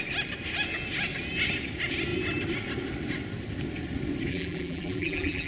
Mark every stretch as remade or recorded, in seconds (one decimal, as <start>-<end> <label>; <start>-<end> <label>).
0.0-4.3 recorded; 4.3-5.5 remade